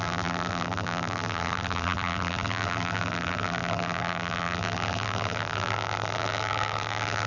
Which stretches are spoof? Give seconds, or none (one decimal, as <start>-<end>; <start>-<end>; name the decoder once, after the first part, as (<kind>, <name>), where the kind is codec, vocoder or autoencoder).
0.0-7.3 (vocoder, BigVGAN v2)